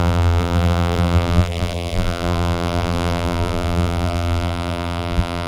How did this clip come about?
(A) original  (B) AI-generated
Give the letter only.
B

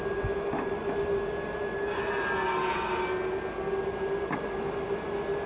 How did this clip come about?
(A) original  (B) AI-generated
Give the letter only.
A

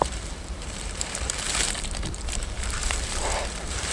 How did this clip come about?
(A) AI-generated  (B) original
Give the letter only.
A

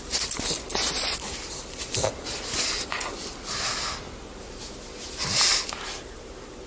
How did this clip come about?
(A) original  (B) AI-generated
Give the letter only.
A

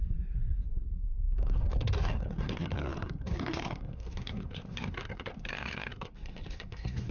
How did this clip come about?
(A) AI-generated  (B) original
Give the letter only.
A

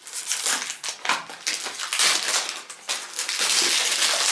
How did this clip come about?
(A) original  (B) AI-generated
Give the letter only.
A